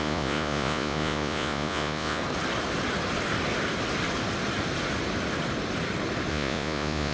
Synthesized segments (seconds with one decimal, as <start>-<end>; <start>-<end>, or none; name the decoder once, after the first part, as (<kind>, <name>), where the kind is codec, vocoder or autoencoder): 0.0-2.2 (vocoder, Vocos); 6.3-7.1